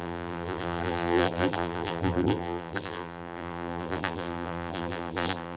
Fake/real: fake